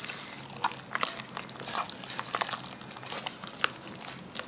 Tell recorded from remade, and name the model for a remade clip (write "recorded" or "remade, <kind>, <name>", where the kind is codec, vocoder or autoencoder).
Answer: recorded